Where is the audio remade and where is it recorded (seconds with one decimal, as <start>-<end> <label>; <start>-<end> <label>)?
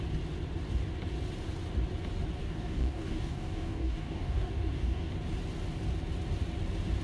0.0-2.4 recorded; 2.4-5.1 remade; 5.1-7.0 recorded